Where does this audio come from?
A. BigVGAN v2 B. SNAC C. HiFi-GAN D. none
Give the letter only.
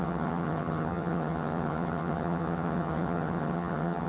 C